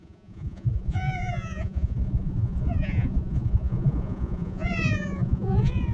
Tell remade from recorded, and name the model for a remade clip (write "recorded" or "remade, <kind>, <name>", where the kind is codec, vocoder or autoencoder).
remade, vocoder, Vocos